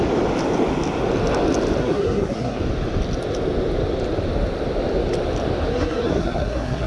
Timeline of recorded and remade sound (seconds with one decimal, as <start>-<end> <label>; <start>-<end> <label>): 0.0-1.8 recorded; 1.8-2.6 remade; 2.6-5.7 recorded; 5.7-6.9 remade